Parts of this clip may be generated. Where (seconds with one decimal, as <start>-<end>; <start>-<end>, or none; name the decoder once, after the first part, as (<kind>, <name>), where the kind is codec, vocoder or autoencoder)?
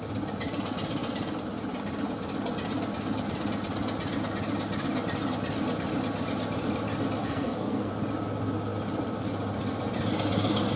7.2-7.9 (codec, SNAC)